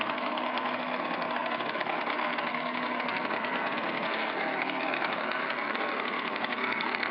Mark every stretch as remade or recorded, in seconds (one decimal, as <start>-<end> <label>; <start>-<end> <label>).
0.0-7.1 remade